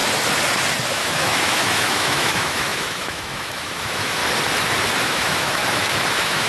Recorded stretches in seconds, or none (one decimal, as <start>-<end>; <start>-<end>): 0.0-0.9; 4.2-5.0; 5.6-6.1